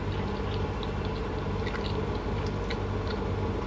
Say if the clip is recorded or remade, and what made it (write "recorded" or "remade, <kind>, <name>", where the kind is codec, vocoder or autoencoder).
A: recorded